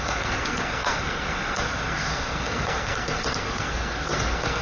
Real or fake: fake